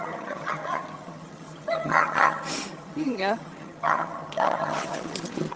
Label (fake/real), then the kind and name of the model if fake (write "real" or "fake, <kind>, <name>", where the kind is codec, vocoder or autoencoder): fake, vocoder, HiFi-GAN